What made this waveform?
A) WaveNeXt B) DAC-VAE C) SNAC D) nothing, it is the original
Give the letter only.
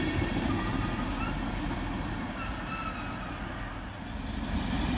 D